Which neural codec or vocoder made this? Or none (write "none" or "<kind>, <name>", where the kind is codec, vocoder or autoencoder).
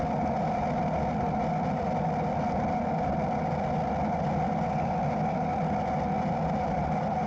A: none